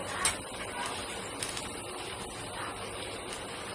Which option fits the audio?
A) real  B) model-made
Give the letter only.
A